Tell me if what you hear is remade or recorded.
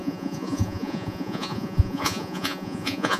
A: remade